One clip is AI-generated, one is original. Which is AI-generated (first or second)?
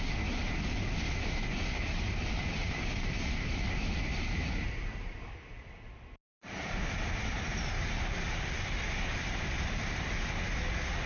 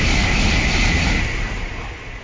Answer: first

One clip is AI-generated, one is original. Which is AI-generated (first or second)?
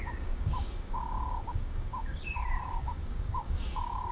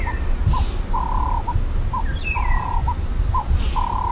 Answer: first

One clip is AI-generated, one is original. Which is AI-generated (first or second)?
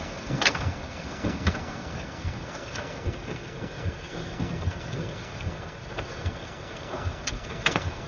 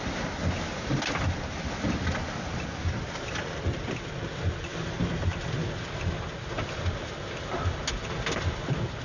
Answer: first